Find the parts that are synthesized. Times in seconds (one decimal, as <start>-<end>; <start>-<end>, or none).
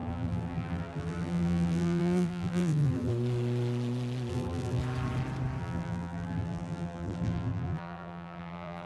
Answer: 0.0-3.1; 4.3-4.8; 5.6-8.9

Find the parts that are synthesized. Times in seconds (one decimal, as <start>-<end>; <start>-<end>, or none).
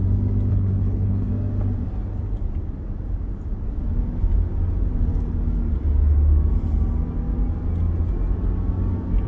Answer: 0.5-1.3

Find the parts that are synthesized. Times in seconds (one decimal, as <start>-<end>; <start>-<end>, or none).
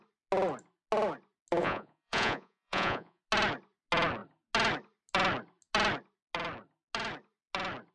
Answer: 1.6-3.2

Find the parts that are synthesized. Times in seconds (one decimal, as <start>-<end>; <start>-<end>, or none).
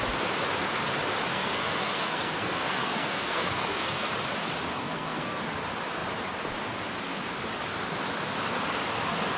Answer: 1.3-4.1; 4.7-5.4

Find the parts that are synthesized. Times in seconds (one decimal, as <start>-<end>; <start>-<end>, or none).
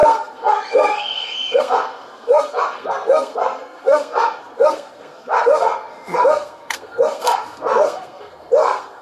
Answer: 0.0-9.0